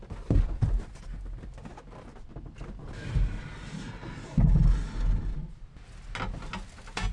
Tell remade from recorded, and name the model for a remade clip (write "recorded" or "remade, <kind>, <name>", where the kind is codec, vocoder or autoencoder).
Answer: recorded